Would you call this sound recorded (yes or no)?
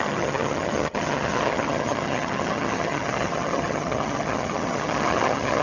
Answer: no